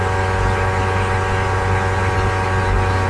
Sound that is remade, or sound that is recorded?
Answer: recorded